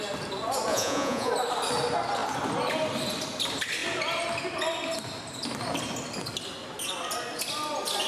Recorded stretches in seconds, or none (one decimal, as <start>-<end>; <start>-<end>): 0.0-0.7; 1.3-8.1